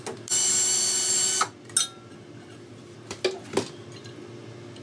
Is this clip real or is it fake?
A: real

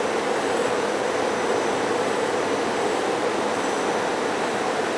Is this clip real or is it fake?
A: fake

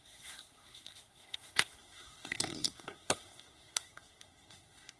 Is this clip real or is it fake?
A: fake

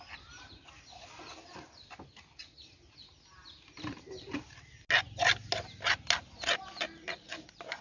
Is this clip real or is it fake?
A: real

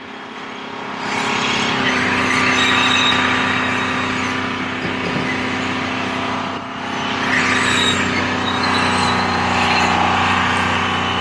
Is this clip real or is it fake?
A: real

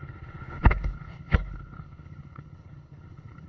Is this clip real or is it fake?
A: fake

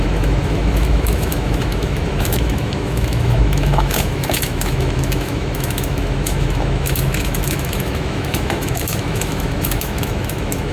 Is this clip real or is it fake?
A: fake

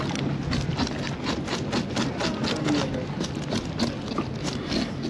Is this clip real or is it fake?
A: real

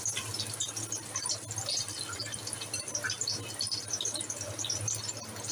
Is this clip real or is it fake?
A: real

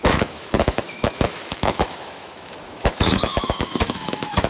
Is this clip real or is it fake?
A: fake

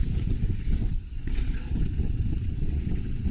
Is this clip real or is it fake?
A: fake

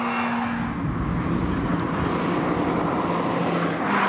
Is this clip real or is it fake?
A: real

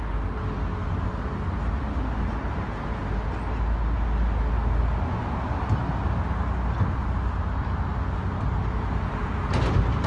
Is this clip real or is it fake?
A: real